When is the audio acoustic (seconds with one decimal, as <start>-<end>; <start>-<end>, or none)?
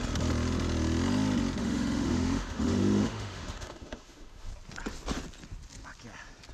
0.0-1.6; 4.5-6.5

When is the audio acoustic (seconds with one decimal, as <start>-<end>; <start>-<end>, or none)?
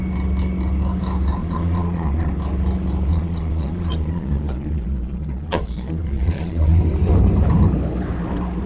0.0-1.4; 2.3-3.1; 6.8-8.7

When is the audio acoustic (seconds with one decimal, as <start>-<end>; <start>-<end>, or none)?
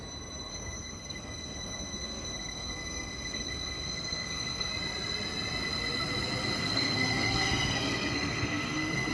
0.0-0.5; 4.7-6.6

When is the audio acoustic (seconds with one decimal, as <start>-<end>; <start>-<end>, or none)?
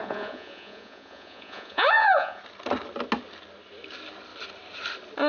2.4-5.3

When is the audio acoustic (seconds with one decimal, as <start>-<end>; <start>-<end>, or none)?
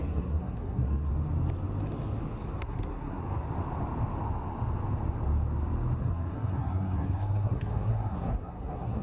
1.1-2.6; 3.2-6.0